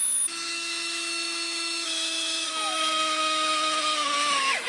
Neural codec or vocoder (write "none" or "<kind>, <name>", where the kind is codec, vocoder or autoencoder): autoencoder, DAC-VAE